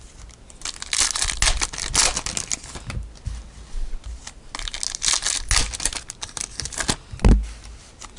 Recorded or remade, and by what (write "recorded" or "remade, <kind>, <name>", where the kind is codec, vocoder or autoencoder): recorded